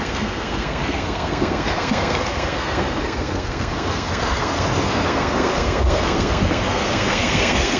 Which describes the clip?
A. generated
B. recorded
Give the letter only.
A